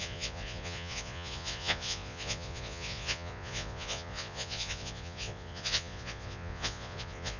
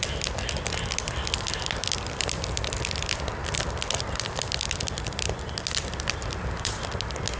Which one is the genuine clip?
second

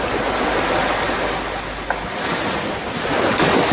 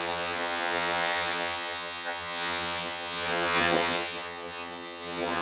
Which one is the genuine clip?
first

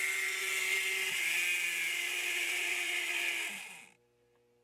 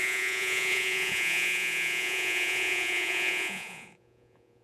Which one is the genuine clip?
first